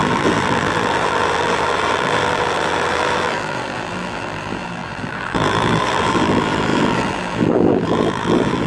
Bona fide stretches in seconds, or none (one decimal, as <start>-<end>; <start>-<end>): none